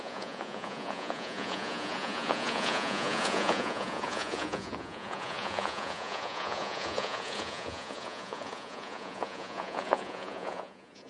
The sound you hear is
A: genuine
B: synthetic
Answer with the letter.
B